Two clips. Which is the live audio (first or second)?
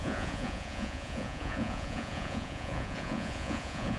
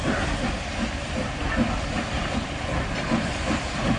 second